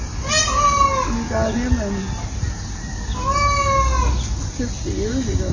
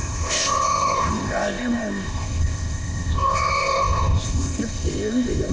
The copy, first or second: second